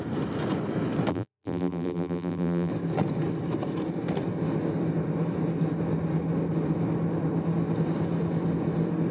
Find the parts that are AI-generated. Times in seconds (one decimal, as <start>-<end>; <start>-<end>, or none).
1.1-2.7